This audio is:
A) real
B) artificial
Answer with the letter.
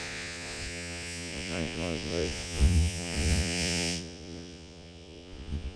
B